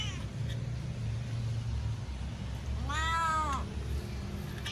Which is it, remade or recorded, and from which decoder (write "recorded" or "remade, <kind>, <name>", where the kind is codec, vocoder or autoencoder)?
recorded